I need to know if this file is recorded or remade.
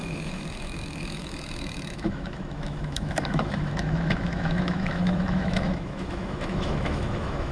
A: remade